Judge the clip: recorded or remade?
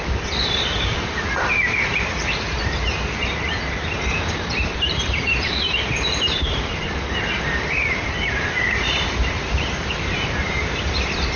remade